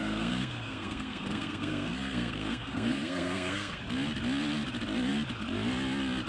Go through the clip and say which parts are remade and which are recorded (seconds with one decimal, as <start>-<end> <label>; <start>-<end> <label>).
0.0-3.8 remade; 3.8-6.3 recorded